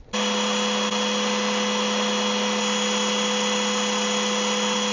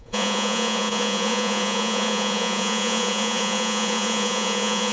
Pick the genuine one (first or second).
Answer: first